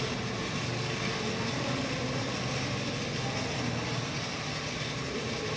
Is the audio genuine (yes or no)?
yes